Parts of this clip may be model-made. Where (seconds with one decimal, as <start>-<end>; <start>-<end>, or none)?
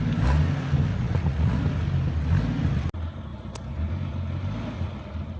0.9-1.6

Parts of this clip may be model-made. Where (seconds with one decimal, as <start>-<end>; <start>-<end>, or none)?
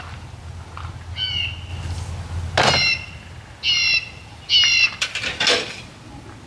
none